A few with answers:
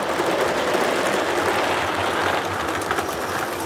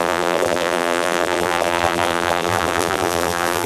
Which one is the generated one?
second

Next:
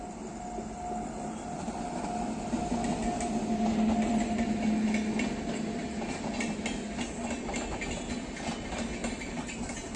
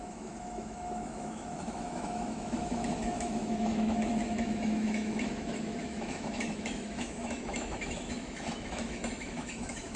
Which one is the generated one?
second